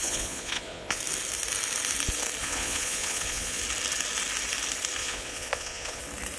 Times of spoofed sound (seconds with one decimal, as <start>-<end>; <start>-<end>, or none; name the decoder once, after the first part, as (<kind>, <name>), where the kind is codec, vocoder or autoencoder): 0.0-1.0 (vocoder, Vocos); 2.4-3.6; 5.0-6.0